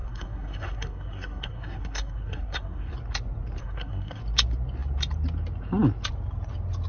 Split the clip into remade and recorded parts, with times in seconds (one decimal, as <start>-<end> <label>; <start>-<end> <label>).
0.0-2.9 remade; 2.9-3.6 recorded; 3.6-4.2 remade; 4.2-6.9 recorded